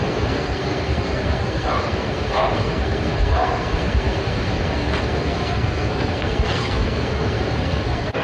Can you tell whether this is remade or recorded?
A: remade